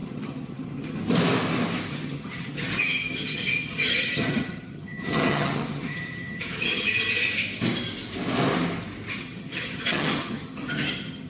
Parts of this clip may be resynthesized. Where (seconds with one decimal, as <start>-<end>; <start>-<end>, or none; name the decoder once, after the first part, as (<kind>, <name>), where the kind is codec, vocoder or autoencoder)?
0.0-1.0 (vocoder, HiFi-GAN); 1.9-6.9; 9.1-11.3